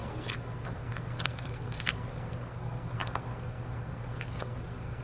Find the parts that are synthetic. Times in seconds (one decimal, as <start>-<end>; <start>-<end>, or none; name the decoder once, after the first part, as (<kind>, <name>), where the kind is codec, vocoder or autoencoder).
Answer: 0.0-5.0 (codec, SNAC)